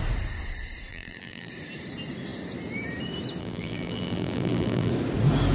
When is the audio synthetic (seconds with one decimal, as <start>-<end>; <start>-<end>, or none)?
0.9-1.5; 3.4-4.9